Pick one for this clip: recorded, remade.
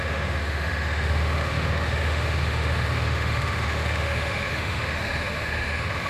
remade